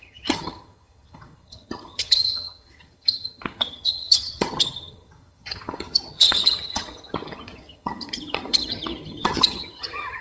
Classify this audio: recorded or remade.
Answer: remade